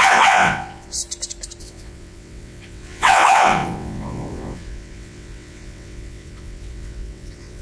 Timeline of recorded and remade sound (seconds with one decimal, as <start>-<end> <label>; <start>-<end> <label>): 0.0-1.0 remade; 1.0-1.6 recorded; 1.6-7.6 remade